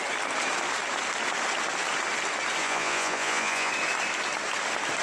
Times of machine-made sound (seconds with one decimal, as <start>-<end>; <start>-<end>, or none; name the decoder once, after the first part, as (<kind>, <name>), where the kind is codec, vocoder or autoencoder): 2.6-3.7 (vocoder, Vocos)